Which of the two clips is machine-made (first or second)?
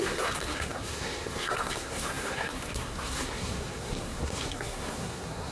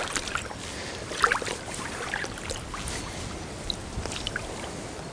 first